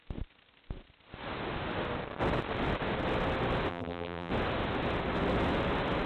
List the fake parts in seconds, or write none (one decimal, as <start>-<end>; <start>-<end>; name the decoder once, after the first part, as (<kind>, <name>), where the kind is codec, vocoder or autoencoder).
3.7-4.3 (vocoder, BigVGAN v2)